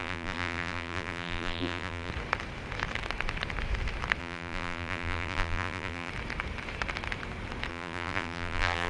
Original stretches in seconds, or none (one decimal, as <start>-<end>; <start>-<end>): 2.1-4.2; 6.1-7.7